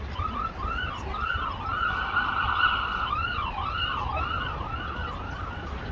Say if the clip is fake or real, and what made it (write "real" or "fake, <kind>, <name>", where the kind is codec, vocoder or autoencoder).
real